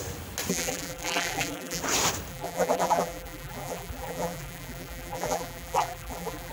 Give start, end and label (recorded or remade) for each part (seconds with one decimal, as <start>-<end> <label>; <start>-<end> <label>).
0.0-0.5 recorded; 0.5-1.8 remade; 1.8-2.3 recorded; 2.3-6.5 remade